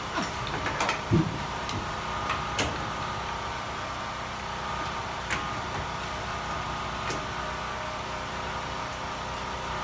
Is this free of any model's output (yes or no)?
yes